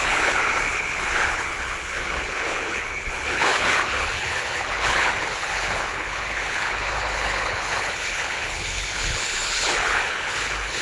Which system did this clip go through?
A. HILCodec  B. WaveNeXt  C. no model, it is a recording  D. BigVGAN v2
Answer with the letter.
A